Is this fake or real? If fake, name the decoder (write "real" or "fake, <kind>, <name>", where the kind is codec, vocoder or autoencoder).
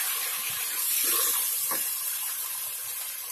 fake, vocoder, BigVGAN v2